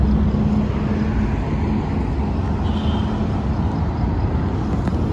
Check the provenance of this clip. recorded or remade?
recorded